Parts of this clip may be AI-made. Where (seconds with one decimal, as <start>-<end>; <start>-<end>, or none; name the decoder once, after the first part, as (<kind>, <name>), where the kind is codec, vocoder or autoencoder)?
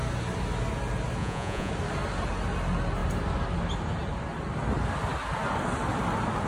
1.2-1.7 (vocoder, Vocos)